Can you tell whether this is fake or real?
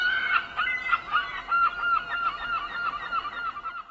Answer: real